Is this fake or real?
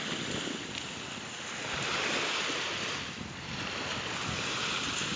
real